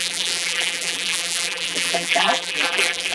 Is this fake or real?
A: fake